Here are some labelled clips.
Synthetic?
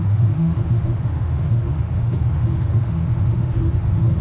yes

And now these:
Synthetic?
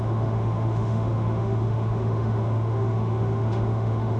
yes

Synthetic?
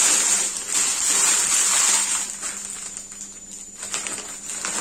no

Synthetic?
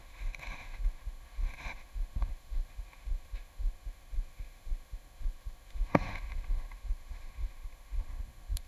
yes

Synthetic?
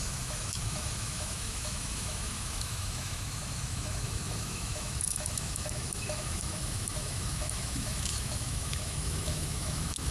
yes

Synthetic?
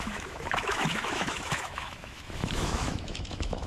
yes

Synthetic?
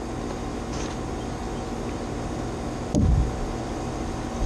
no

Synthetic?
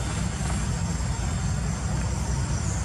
no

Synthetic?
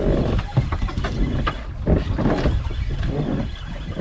no